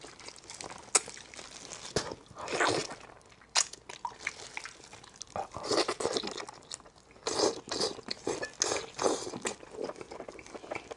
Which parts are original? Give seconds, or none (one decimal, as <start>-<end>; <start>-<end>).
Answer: 0.0-11.0